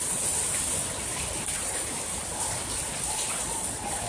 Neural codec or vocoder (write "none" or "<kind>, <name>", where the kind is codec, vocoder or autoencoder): none